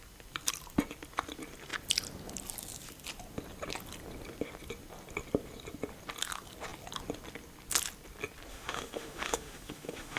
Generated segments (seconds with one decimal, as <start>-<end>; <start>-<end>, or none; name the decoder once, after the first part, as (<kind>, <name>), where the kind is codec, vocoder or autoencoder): 8.5-10.2 (autoencoder, DAC-VAE)